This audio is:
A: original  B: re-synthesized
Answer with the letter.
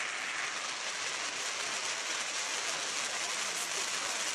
A